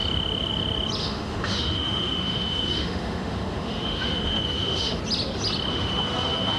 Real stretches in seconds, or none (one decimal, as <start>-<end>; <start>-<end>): 0.0-1.0; 5.0-5.7